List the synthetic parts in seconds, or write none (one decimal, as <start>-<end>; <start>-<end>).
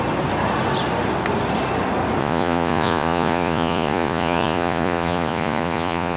2.2-6.2